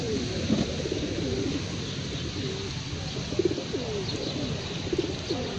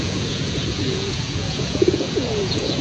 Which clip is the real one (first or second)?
first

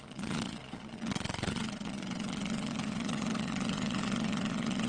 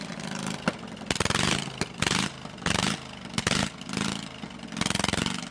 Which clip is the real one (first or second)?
second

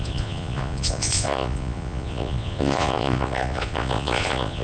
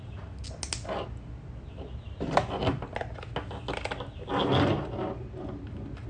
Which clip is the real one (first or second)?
second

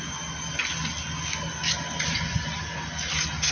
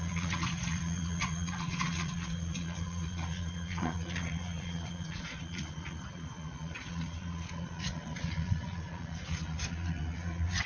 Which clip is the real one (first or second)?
first